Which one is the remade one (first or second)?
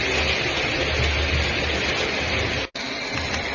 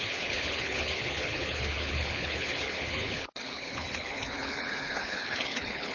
second